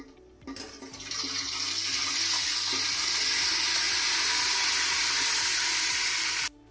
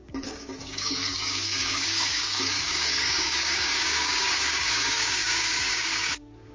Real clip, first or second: first